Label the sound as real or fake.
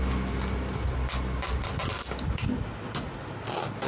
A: real